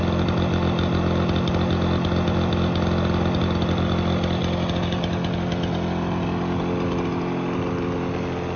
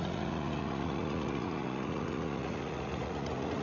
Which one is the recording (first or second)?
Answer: first